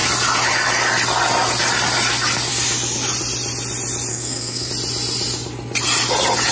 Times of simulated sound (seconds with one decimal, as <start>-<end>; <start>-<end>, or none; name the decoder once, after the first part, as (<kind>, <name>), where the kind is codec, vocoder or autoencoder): 4.1-4.7 (codec, SNAC)